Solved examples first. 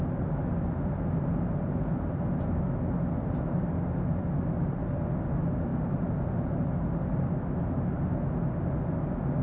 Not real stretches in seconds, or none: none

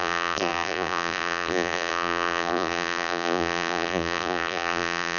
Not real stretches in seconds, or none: 0.0-5.2 (vocoder, BigVGAN v2)

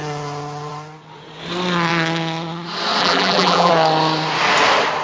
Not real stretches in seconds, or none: 3.0-3.7 (vocoder, BigVGAN v2)

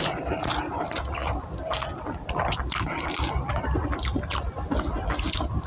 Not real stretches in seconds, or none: none

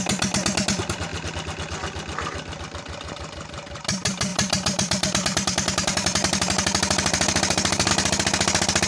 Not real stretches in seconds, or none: 4.3-7.9 (vocoder, BigVGAN v2)

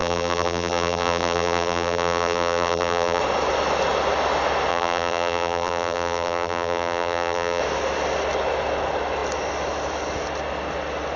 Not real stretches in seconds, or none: 0.0-3.2 (vocoder, BigVGAN v2); 4.7-7.6